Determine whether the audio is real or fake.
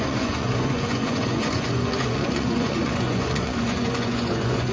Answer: fake